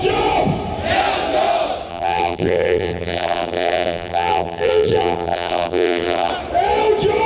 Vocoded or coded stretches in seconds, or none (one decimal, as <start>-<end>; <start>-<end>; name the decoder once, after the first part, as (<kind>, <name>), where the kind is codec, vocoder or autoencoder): 1.9-6.3 (vocoder, BigVGAN v2)